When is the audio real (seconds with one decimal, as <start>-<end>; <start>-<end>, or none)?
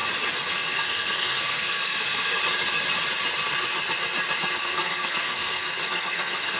0.0-0.5; 2.4-4.6